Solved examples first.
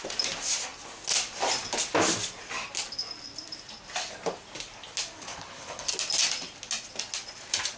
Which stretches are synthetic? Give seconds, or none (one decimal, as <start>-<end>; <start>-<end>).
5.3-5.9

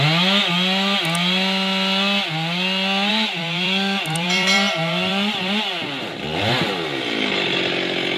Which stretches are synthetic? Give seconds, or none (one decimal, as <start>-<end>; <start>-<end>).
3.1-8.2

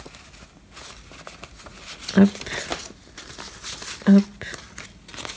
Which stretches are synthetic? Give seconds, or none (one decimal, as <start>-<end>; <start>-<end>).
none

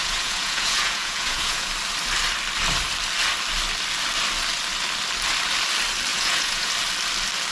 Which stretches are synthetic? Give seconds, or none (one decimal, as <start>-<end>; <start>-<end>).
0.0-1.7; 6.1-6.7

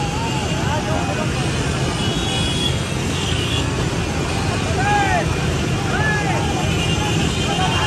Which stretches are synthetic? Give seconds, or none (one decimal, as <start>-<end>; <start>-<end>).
2.6-3.8

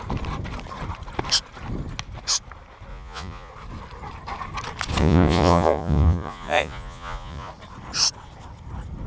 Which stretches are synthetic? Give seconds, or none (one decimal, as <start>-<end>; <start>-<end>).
2.9-3.5; 5.0-7.5

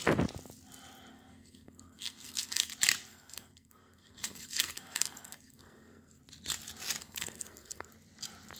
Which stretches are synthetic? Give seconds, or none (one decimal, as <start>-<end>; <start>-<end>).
1.1-2.7; 3.1-6.2; 7.0-7.9